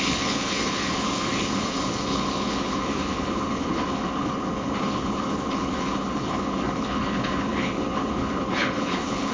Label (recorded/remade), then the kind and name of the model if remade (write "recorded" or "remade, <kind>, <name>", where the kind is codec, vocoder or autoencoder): remade, codec, HILCodec